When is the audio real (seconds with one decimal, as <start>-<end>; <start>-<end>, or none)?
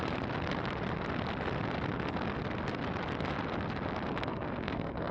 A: 0.0-4.3